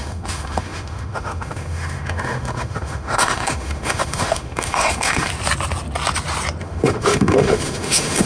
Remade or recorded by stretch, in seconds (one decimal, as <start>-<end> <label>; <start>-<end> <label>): 0.0-5.3 remade; 5.3-6.6 recorded; 6.6-8.3 remade